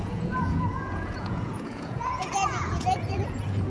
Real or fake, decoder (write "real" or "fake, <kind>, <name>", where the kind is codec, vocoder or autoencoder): fake, vocoder, Vocos